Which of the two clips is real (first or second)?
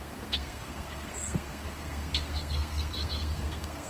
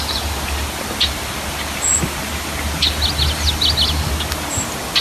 second